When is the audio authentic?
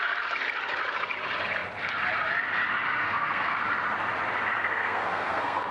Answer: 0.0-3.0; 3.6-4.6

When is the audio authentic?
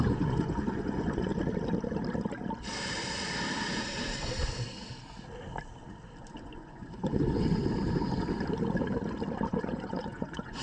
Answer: 1.3-6.4; 7.6-9.5